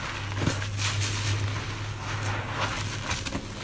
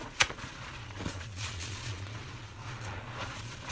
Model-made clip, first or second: second